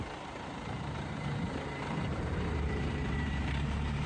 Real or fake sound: fake